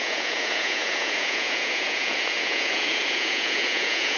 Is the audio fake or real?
fake